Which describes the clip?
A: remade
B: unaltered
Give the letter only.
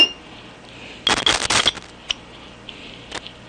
B